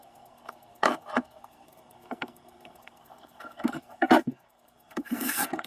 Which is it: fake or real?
fake